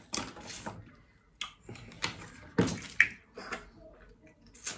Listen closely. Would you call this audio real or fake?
real